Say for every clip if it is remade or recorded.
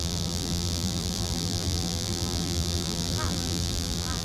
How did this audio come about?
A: remade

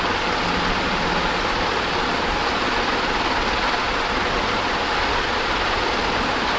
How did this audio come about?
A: recorded